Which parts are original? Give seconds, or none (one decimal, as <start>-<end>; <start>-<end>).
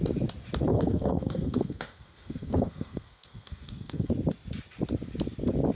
0.0-0.7; 4.1-5.7